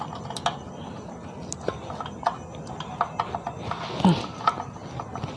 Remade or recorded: recorded